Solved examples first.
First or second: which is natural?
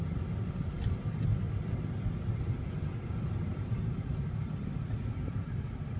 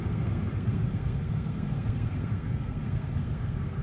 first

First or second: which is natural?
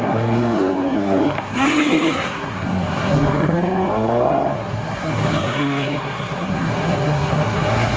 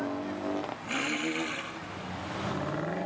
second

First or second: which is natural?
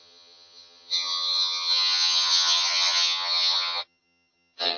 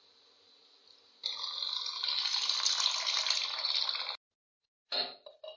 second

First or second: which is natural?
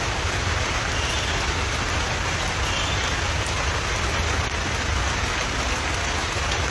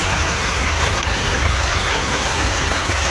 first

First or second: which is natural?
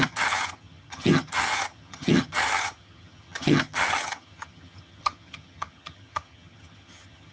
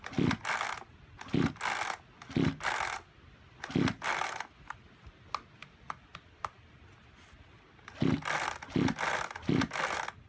second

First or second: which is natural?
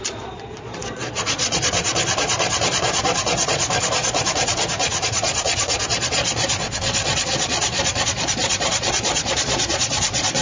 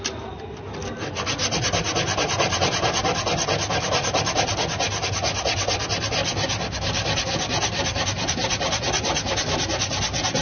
second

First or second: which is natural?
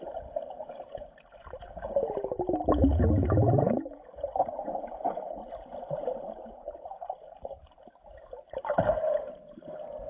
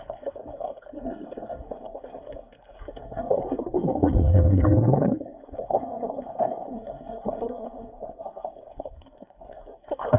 first